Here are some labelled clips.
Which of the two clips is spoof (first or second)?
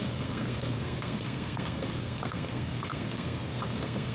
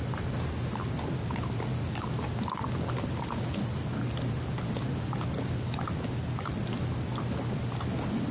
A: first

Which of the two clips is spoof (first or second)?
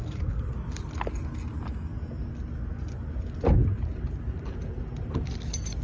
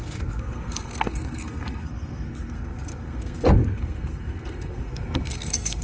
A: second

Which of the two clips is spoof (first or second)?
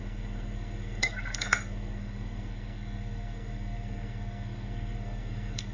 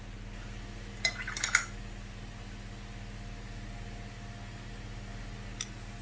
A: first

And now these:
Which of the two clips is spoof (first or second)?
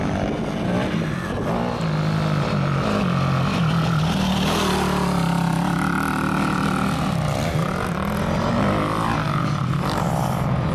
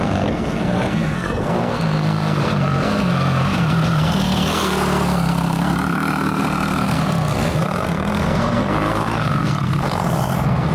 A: second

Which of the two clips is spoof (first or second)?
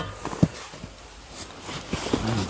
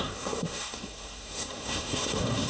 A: second